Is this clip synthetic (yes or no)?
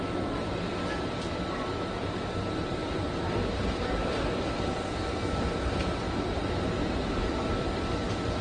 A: yes